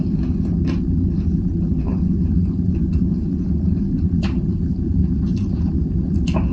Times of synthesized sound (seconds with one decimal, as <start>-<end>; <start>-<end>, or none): 2.4-5.7